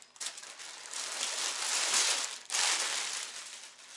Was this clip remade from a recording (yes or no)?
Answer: no